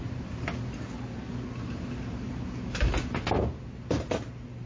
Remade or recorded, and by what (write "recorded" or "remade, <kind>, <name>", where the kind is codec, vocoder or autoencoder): recorded